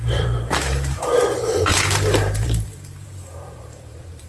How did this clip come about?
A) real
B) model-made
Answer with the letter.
B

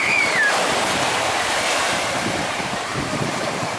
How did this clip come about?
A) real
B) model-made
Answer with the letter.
B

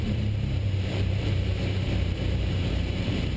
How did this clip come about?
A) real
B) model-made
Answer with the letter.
B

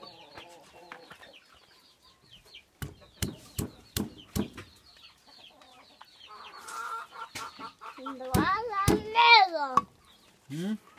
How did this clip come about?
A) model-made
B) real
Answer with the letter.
B